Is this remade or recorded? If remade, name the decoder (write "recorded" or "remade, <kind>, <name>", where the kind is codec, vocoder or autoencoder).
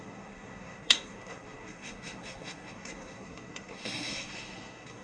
remade, codec, SNAC